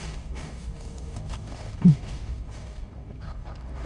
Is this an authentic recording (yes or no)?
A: no